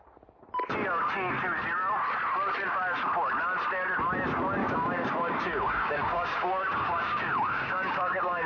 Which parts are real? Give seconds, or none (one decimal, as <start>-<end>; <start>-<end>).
0.0-4.6